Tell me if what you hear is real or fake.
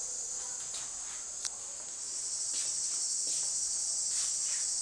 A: real